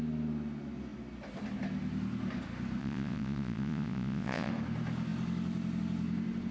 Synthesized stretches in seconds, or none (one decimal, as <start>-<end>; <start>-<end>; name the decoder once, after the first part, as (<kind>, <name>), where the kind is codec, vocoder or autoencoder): 2.8-4.5 (vocoder, Vocos)